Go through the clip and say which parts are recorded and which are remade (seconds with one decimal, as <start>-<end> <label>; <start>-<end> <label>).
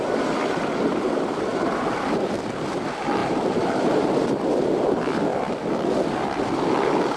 0.0-1.5 recorded; 1.5-2.4 remade; 2.4-3.2 recorded; 3.2-4.1 remade; 4.1-7.2 recorded